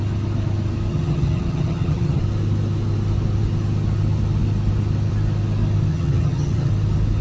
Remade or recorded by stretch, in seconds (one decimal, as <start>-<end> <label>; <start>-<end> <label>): 0.0-0.9 recorded; 0.9-2.2 remade; 2.2-5.9 recorded; 5.9-6.7 remade; 6.7-7.2 recorded